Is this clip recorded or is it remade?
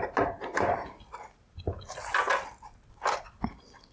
recorded